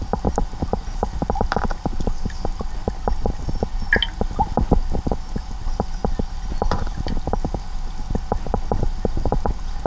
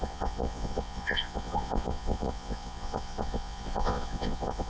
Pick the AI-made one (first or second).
second